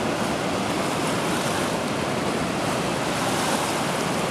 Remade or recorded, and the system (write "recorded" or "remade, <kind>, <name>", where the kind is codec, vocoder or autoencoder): recorded